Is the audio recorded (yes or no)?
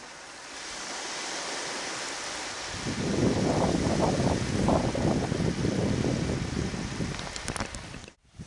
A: yes